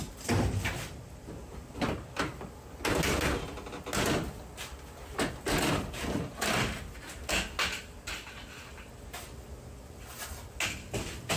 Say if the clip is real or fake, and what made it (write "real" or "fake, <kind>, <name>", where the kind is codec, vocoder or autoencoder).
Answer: real